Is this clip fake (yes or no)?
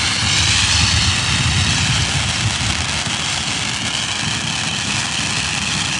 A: no